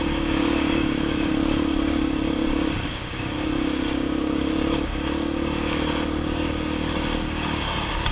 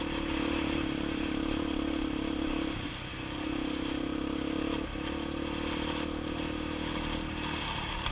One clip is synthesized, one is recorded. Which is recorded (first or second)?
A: second